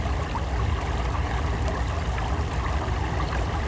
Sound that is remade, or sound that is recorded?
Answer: recorded